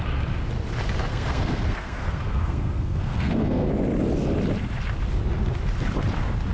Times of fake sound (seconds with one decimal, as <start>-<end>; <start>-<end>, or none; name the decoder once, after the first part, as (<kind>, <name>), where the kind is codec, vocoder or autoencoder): 1.1-3.7 (codec, SNAC)